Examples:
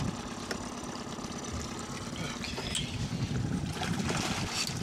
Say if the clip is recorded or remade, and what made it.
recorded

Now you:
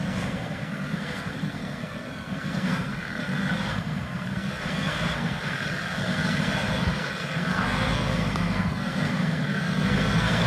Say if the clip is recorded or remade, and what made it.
remade, codec, SNAC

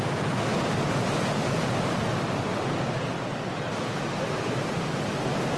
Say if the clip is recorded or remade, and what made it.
recorded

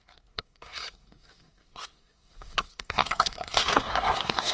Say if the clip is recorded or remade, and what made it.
remade, codec, SNAC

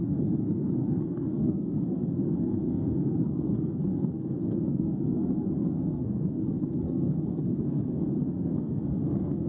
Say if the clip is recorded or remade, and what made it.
remade, codec, SNAC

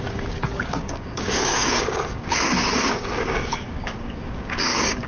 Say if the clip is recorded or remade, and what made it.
remade, codec, DAC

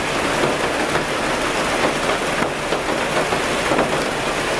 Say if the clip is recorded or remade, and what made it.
recorded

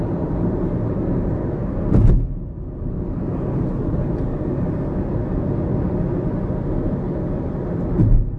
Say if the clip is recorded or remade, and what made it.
recorded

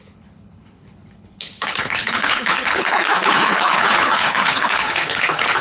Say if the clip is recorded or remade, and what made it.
remade, codec, HILCodec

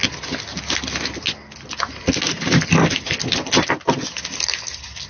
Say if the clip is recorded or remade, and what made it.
recorded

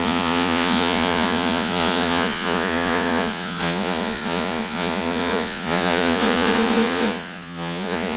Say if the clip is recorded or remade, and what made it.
remade, vocoder, Vocos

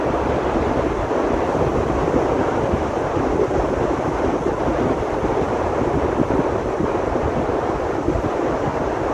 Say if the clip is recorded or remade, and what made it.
remade, vocoder, BigVGAN v2